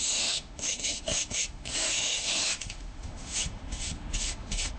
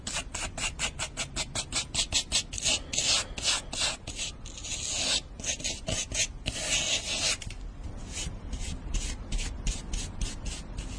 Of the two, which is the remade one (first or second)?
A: first